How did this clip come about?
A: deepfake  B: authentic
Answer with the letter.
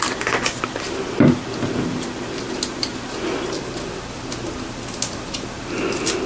B